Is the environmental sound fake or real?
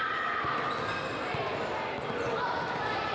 real